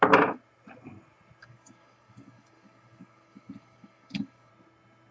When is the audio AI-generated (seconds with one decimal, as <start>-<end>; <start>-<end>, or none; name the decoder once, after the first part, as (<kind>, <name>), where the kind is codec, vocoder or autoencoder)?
1.4-4.5 (codec, DAC)